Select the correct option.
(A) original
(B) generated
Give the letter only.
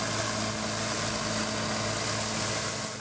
A